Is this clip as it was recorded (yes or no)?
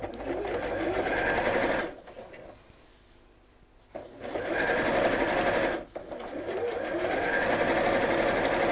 yes